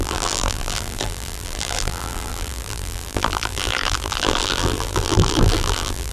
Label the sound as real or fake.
fake